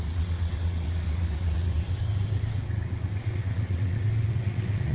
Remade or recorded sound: remade